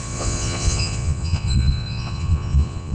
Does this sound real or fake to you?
fake